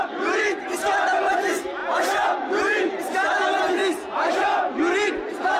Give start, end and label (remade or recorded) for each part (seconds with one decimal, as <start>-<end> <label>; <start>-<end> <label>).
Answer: 0.0-5.6 recorded